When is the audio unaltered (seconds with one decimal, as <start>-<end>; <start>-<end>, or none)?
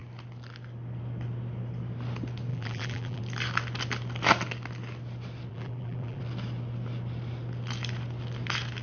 0.0-2.5; 3.2-5.5; 6.2-8.8